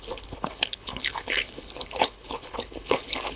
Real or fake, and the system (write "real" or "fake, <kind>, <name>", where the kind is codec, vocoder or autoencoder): fake, codec, HILCodec